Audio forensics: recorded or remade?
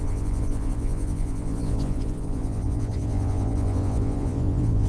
remade